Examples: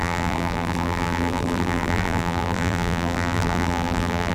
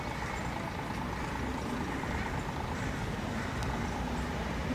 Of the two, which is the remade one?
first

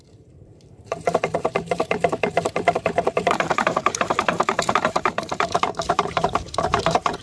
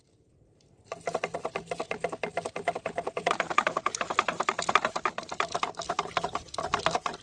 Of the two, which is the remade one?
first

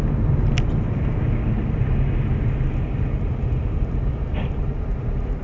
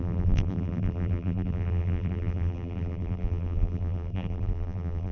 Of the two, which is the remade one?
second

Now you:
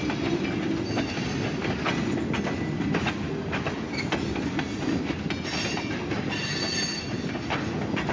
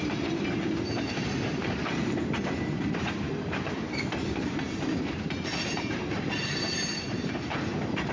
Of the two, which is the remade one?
second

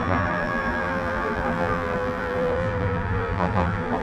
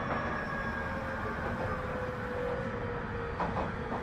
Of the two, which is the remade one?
first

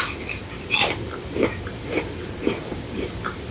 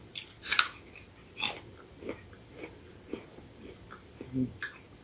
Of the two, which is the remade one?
first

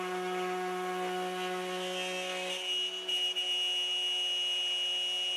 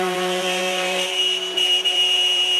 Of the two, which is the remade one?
second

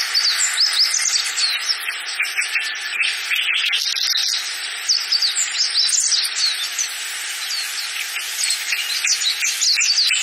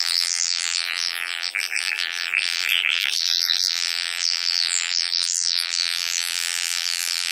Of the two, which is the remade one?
second